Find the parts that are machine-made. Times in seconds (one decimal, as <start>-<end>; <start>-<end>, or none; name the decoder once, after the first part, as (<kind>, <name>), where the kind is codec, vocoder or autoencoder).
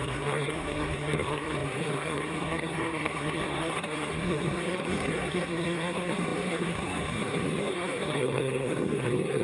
0.0-9.4 (codec, SNAC)